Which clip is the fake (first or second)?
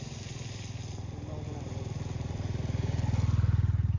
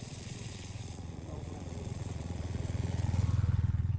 second